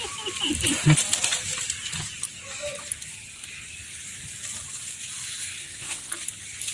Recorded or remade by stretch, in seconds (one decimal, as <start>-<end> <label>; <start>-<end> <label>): 0.0-5.6 recorded; 5.6-6.1 remade; 6.1-6.7 recorded